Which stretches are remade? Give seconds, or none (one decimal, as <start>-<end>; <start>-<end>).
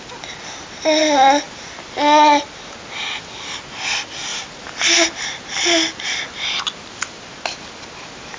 1.0-1.9; 4.3-6.6